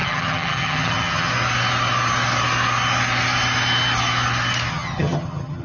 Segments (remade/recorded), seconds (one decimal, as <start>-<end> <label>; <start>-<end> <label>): 0.0-1.3 remade; 1.3-4.7 recorded; 4.7-5.6 remade